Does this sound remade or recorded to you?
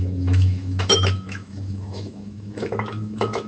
remade